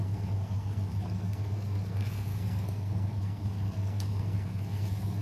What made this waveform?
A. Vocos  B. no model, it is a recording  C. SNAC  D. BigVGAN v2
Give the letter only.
C